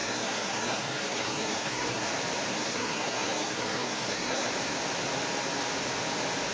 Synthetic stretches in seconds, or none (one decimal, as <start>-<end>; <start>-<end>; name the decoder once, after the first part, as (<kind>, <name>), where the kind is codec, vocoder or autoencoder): 0.0-2.1 (codec, SNAC); 2.5-4.5